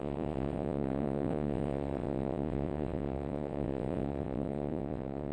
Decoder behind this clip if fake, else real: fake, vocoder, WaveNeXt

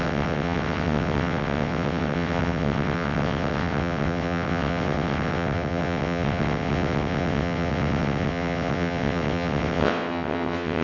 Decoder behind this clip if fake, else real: fake, vocoder, WaveNeXt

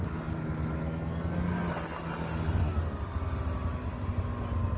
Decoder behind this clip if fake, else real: real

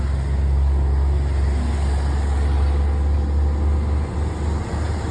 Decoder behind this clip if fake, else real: real